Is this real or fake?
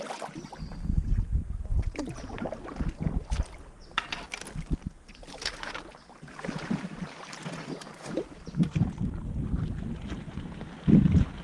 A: real